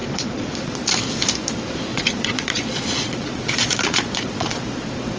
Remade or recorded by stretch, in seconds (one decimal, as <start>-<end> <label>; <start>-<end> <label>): 0.0-0.8 remade; 0.8-1.9 recorded; 1.9-4.6 remade; 4.6-5.2 recorded